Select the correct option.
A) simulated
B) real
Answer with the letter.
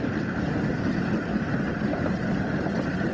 B